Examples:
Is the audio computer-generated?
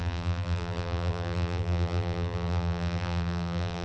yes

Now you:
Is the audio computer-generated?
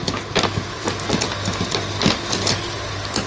no